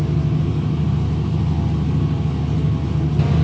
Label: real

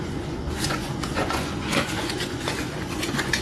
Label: fake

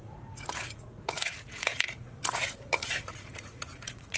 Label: fake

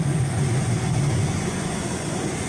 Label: fake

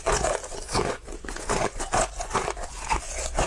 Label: fake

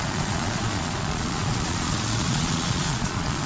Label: fake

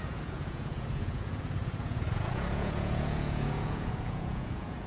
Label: fake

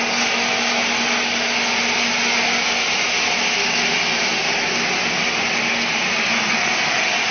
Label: real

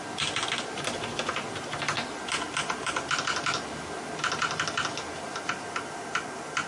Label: real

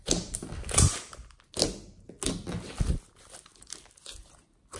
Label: real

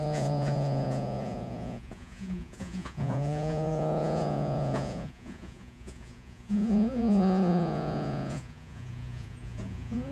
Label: fake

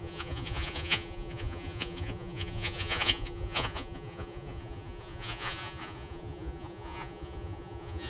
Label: fake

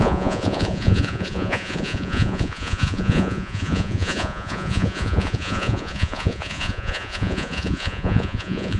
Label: fake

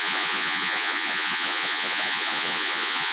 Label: fake